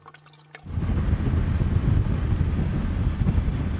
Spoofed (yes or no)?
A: no